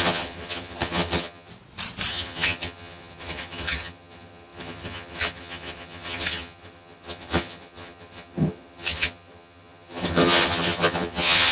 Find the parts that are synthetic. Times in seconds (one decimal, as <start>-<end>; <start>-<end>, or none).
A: 0.0-1.5; 2.1-11.5